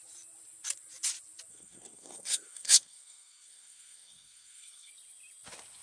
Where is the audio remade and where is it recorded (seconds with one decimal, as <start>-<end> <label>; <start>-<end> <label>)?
0.0-1.5 recorded; 1.5-4.9 remade; 4.9-5.8 recorded